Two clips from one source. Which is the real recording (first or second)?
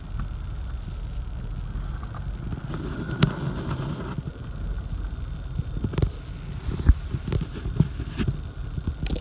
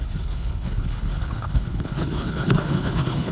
first